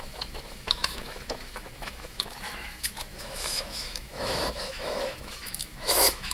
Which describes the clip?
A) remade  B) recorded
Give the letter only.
A